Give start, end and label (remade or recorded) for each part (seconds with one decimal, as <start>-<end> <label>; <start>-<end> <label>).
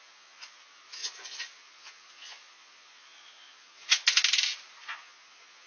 0.0-4.0 remade; 4.0-4.8 recorded; 4.8-5.7 remade